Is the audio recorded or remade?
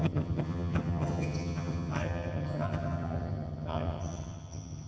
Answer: remade